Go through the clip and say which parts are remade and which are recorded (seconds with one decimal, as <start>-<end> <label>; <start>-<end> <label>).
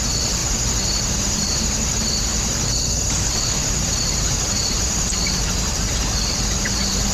0.0-0.4 remade; 0.4-1.1 recorded; 1.1-7.1 remade